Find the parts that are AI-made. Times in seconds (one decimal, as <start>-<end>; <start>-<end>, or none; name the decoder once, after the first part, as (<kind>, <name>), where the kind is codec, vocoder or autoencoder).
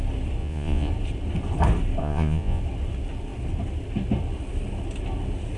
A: 0.4-0.9 (vocoder, Vocos); 2.0-2.6